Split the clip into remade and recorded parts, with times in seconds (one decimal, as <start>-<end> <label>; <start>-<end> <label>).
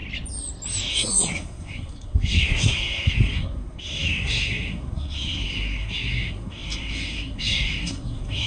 0.0-0.9 recorded; 0.9-8.5 remade